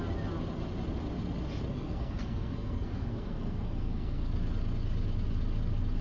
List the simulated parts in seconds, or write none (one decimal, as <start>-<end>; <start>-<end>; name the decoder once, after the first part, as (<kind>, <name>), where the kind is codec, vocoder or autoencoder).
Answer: 1.7-4.3 (codec, SNAC)